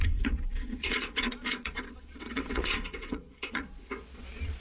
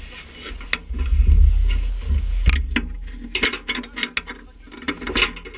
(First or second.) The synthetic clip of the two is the first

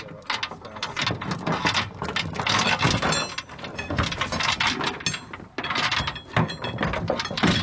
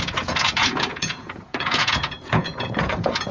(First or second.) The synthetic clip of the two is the second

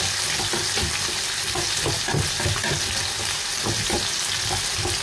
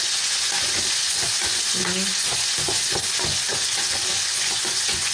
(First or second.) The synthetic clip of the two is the second